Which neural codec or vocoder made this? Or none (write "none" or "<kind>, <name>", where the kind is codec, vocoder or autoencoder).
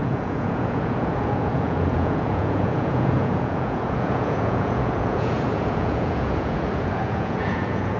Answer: vocoder, Vocos